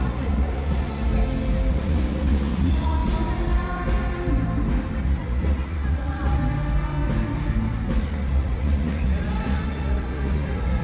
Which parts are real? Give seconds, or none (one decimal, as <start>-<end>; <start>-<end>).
1.1-1.7; 3.0-5.0; 6.4-8.0